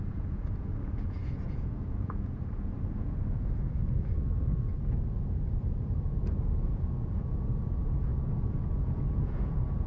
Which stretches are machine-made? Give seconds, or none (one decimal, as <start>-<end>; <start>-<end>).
0.0-9.9